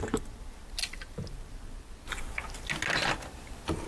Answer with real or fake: real